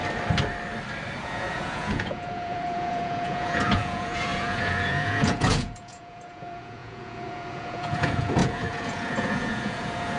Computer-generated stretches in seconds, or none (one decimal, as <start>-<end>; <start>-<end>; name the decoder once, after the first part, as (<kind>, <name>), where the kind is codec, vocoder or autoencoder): 1.2-10.2 (vocoder, Vocos)